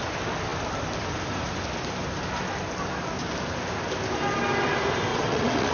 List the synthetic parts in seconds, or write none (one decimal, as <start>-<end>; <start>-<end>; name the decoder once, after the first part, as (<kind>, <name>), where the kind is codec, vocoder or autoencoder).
5.1-5.7 (vocoder, WaveNeXt)

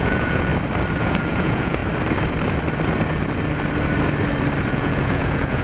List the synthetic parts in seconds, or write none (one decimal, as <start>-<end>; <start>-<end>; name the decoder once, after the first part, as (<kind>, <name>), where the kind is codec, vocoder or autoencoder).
0.0-0.5 (vocoder, Vocos); 1.0-1.8; 4.7-5.6

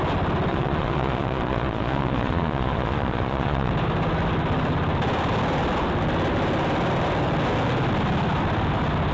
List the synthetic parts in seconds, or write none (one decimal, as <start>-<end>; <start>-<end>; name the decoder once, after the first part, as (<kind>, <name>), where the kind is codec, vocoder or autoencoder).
0.5-3.7 (vocoder, Vocos)